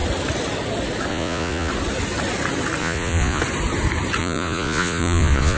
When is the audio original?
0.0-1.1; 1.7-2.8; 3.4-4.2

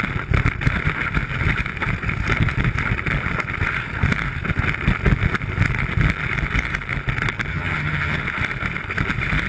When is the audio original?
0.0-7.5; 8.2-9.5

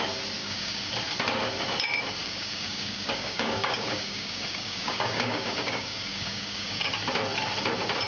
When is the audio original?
0.0-0.4; 0.9-2.2; 6.9-8.1